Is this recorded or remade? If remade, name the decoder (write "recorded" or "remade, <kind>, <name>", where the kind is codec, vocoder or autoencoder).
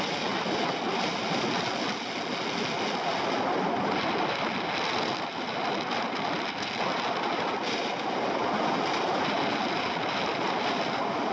recorded